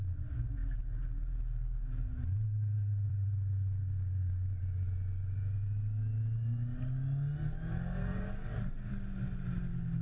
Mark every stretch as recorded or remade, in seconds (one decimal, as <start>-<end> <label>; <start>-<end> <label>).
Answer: 0.0-8.0 recorded; 8.0-8.9 remade; 8.9-10.0 recorded